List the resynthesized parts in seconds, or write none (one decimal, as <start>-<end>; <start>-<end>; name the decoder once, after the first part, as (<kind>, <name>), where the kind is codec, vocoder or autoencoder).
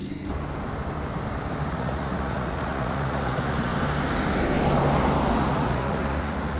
1.7-3.7 (vocoder, Vocos); 5.4-6.6